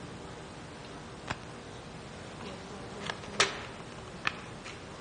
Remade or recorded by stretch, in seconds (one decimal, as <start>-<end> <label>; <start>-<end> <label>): 0.0-5.0 recorded